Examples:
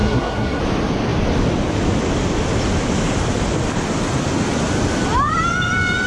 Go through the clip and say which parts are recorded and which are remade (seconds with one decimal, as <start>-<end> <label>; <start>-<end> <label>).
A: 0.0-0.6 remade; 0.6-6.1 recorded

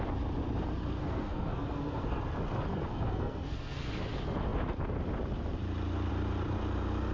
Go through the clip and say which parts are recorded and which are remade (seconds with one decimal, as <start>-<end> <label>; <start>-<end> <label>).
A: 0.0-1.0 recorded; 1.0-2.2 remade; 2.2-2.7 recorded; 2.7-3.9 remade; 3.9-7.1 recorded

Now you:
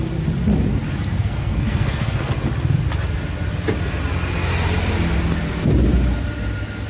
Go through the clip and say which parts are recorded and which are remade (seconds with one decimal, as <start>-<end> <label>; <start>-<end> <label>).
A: 0.0-1.1 recorded; 1.1-2.3 remade; 2.3-6.9 recorded

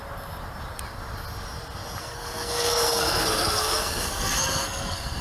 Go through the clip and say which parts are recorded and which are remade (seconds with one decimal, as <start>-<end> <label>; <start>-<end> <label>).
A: 0.0-2.0 recorded; 2.0-5.2 remade

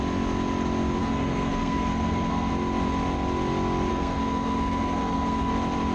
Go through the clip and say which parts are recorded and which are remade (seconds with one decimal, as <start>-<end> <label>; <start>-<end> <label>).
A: 0.0-1.0 recorded; 1.0-2.5 remade; 2.5-3.9 recorded; 3.9-5.5 remade; 5.5-5.9 recorded